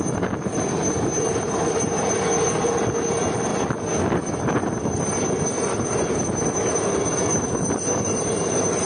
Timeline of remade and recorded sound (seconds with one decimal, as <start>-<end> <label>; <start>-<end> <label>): 0.0-8.8 recorded